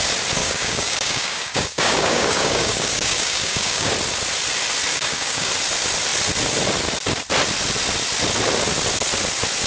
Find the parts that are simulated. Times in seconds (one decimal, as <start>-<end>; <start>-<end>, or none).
0.4-3.9; 4.9-5.5